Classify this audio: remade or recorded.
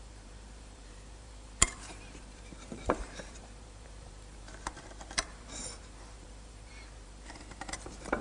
remade